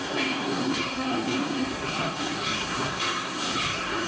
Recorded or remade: remade